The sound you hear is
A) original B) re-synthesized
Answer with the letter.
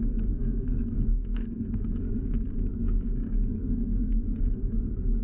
B